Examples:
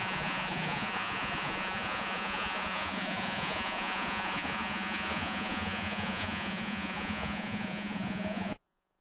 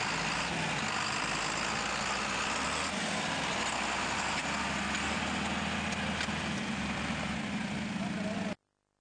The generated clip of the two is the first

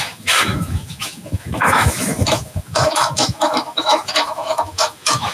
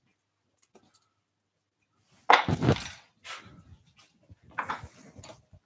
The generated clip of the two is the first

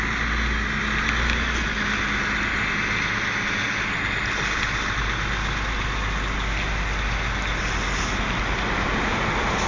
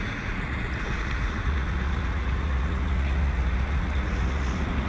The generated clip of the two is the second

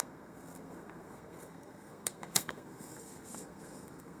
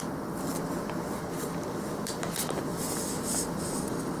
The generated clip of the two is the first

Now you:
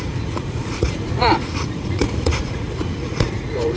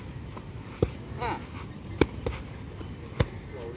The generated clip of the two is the first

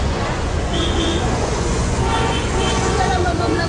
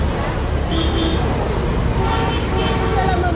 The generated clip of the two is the first